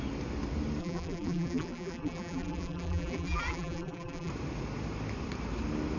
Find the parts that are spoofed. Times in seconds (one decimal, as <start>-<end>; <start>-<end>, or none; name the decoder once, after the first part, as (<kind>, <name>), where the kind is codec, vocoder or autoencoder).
0.8-4.3 (vocoder, BigVGAN v2)